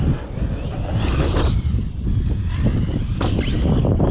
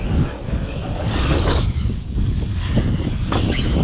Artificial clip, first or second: second